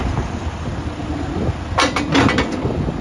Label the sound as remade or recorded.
recorded